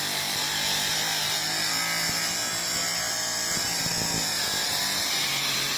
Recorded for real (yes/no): yes